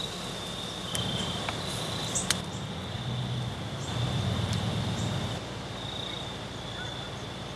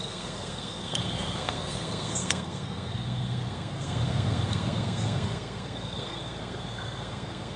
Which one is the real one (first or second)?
first